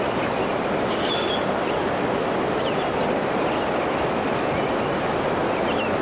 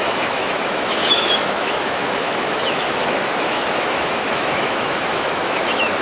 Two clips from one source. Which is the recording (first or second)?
first